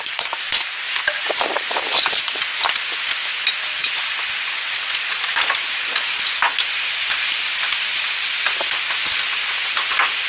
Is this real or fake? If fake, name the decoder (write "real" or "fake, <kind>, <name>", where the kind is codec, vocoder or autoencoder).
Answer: real